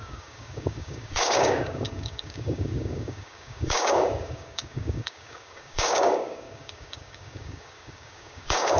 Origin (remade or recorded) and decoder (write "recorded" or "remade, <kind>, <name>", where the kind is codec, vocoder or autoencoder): remade, codec, DAC